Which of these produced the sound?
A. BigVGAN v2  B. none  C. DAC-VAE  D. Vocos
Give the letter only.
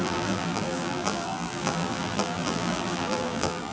A